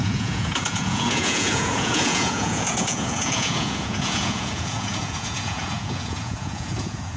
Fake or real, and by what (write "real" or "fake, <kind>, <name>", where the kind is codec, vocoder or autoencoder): fake, vocoder, Vocos